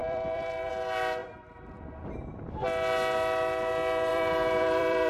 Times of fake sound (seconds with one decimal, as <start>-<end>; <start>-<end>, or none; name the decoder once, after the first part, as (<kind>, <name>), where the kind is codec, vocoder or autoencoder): 0.0-0.7 (vocoder, BigVGAN v2); 1.2-2.5; 4.1-5.1